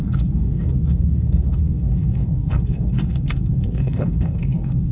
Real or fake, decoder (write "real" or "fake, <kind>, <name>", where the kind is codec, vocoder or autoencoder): fake, codec, SNAC